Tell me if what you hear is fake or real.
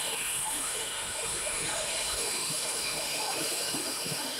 fake